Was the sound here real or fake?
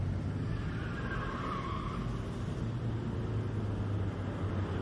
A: real